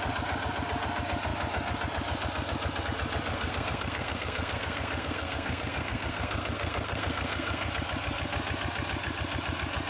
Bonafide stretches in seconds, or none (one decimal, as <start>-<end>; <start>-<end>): 0.0-3.3; 7.7-9.9